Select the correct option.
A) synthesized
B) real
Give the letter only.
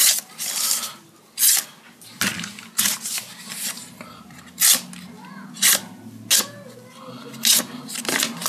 B